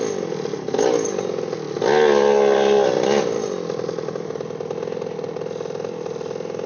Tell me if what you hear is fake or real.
real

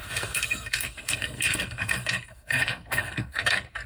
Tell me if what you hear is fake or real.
fake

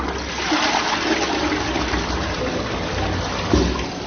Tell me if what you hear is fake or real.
real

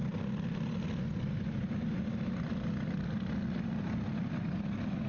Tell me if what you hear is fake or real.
real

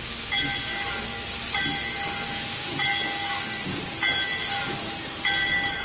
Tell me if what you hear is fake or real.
real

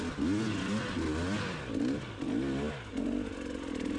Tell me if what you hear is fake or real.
real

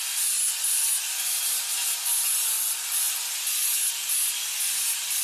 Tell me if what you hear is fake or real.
real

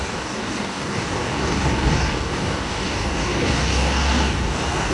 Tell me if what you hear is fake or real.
fake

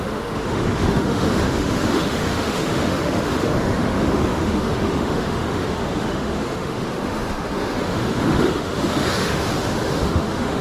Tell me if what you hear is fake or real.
fake